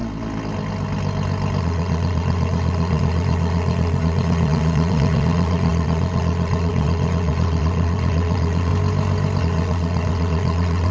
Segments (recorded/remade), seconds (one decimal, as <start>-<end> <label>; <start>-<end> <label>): 0.0-1.6 recorded; 1.6-8.7 remade; 8.7-9.4 recorded; 9.4-10.9 remade